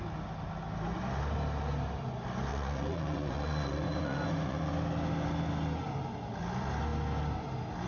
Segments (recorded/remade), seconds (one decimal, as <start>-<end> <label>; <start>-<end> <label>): 0.0-2.5 recorded; 2.5-4.7 remade; 4.7-7.9 recorded